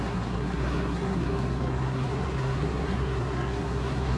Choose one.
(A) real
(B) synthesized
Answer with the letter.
B